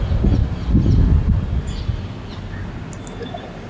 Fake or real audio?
real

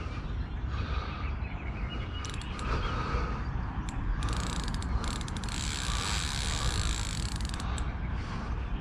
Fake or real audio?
real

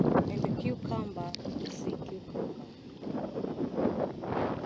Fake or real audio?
real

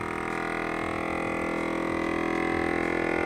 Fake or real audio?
real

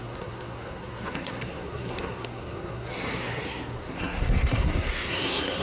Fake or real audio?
fake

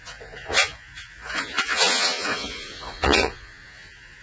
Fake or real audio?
fake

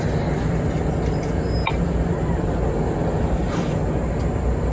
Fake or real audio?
real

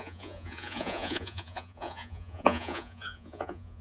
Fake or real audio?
fake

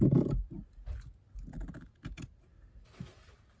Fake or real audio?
real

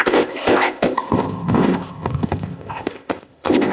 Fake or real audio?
fake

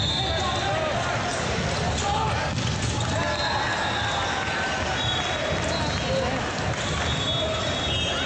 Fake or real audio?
real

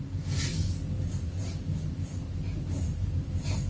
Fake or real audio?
real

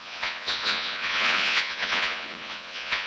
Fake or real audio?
fake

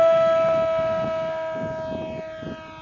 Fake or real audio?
real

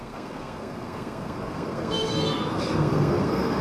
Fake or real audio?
fake